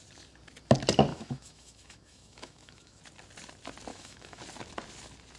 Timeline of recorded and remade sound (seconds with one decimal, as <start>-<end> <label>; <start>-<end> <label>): 0.0-1.1 recorded; 1.1-3.0 remade; 3.0-3.9 recorded; 3.9-4.4 remade; 4.4-5.4 recorded